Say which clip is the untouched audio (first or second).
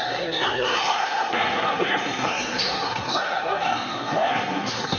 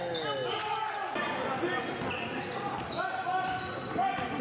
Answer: second